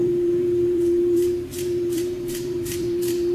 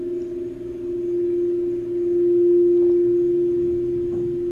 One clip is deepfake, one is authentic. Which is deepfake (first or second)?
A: first